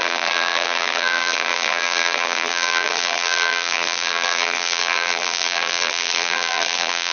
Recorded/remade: remade